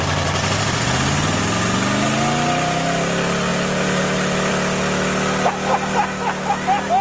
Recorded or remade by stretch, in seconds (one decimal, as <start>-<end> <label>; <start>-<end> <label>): 0.0-3.5 recorded; 3.5-4.5 remade; 4.5-7.0 recorded